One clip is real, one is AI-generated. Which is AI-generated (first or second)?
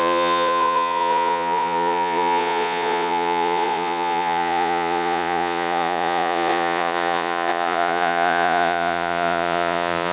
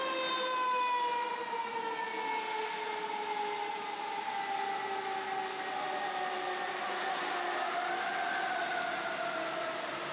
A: first